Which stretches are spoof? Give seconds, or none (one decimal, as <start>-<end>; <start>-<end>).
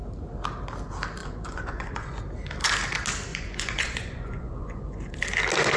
1.2-2.2; 3.3-5.2